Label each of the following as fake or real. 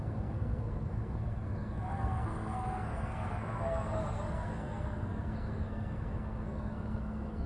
fake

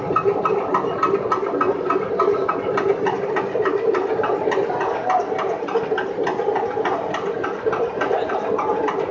real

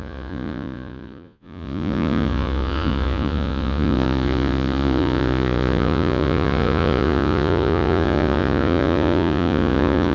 fake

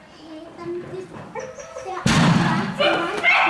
real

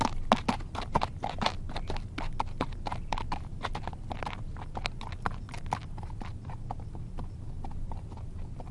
real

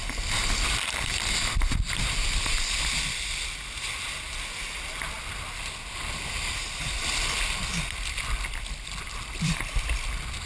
real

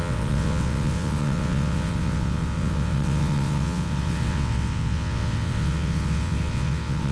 fake